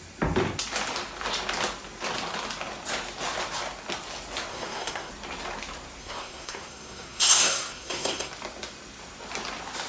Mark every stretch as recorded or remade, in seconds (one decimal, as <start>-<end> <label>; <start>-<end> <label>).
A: 0.0-4.5 recorded; 4.5-5.1 remade; 5.1-6.0 recorded; 6.0-8.3 remade; 8.3-9.9 recorded